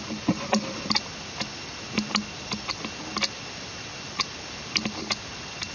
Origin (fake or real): real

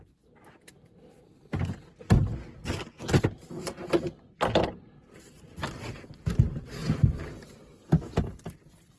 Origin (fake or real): real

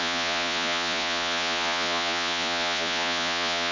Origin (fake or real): fake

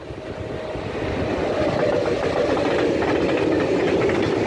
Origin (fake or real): real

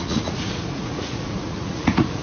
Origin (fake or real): fake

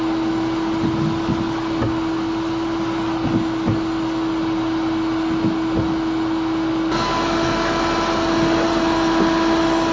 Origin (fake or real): real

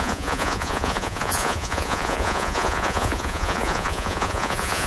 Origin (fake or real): fake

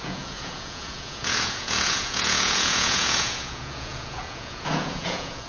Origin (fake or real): fake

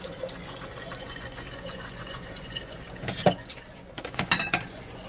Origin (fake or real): fake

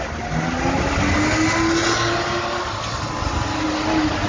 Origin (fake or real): real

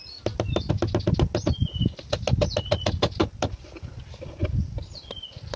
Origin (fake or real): real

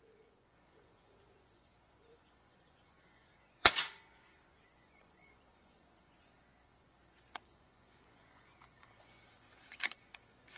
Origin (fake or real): fake